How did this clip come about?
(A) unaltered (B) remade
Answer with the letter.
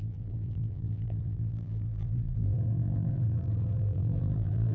B